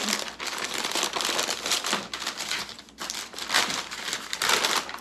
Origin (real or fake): fake